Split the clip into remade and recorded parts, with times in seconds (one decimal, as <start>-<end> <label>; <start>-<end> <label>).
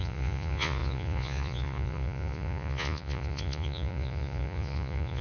0.0-5.2 remade